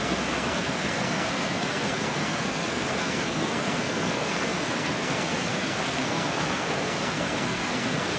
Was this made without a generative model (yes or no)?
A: no